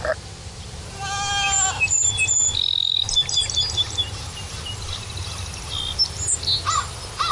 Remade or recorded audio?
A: recorded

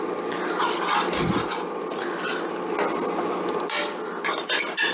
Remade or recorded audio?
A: recorded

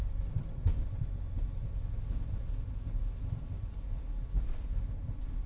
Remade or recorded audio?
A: recorded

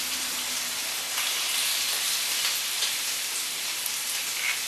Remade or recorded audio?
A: recorded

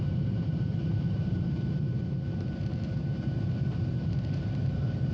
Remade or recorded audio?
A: remade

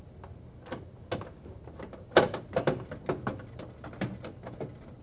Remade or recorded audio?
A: recorded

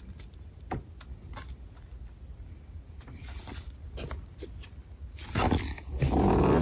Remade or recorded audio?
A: recorded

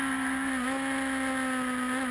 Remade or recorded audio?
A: recorded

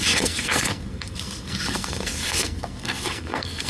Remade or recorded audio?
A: remade